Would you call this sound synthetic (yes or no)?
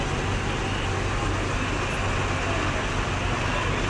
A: no